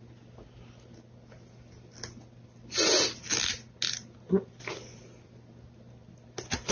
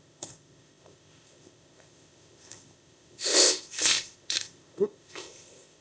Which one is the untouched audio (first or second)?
first